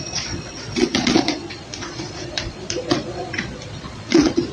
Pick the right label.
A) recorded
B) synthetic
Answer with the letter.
B